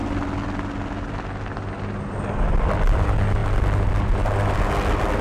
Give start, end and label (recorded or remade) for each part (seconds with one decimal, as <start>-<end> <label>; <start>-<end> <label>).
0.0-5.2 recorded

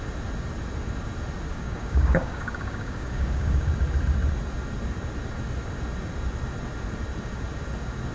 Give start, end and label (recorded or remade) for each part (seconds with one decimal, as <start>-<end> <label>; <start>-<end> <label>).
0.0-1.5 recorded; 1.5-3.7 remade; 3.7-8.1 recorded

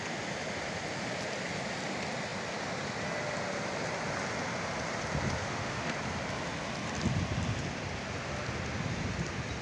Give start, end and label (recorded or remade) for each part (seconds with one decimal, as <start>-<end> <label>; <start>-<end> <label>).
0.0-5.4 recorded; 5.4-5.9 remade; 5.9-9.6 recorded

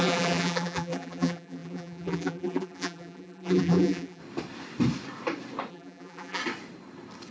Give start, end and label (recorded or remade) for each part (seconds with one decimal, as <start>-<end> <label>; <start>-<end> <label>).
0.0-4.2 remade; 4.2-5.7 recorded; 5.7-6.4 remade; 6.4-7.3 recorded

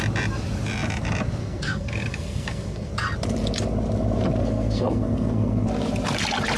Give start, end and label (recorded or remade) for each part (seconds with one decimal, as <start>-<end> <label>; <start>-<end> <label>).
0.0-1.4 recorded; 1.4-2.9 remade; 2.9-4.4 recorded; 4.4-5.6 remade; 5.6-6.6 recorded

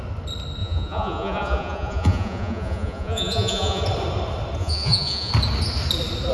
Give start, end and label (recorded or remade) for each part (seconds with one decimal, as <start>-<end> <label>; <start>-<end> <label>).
0.0-0.6 recorded; 0.6-3.8 remade; 3.8-4.6 recorded; 4.6-5.3 remade; 5.3-6.3 recorded

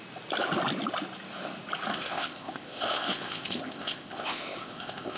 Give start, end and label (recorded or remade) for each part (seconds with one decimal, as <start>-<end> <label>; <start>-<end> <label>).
0.0-1.9 recorded; 1.9-5.2 remade

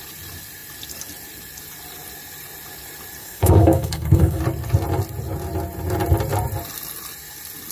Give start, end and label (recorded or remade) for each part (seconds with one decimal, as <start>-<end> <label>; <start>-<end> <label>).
0.0-3.2 recorded; 3.2-4.4 remade; 4.4-7.7 recorded